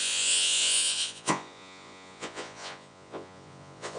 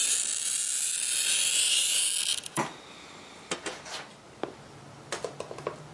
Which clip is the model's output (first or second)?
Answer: first